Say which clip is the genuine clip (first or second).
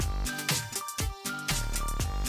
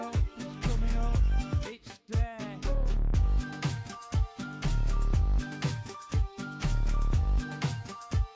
first